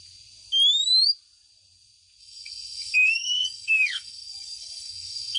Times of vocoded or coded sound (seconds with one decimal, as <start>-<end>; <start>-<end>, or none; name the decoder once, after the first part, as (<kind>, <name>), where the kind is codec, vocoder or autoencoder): 2.2-5.4 (codec, SNAC)